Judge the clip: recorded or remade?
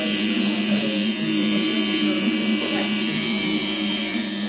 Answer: remade